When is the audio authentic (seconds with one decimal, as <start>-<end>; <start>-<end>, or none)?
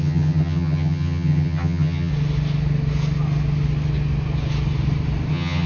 2.1-5.3